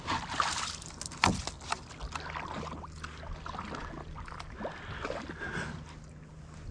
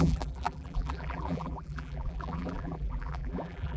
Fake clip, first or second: second